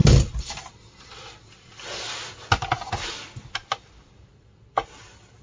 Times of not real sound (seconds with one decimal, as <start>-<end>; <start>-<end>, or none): none